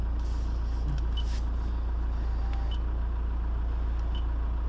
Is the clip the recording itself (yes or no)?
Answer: yes